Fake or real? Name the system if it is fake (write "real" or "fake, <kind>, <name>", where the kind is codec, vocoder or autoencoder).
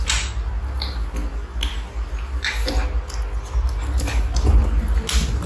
real